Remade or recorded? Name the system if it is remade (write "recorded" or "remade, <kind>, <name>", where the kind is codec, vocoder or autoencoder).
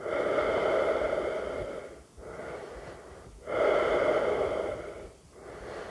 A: remade, vocoder, BigVGAN v2